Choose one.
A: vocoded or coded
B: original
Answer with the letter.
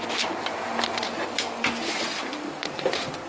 B